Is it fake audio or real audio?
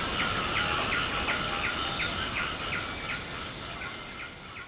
real